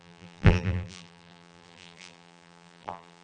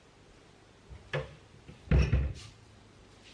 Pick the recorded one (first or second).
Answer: second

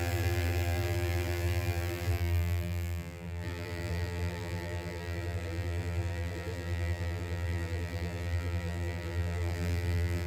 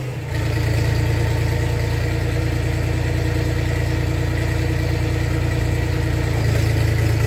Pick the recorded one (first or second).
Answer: second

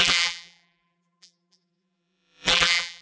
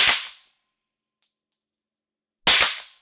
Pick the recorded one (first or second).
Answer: second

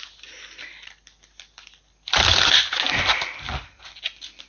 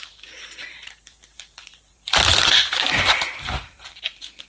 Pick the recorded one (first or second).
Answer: first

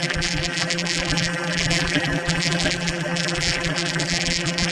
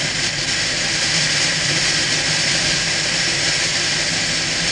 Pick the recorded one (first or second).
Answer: second